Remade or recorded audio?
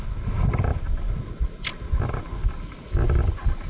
recorded